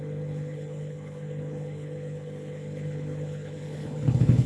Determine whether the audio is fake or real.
fake